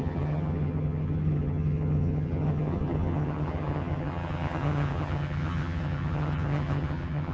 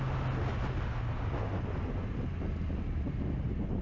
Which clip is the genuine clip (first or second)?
second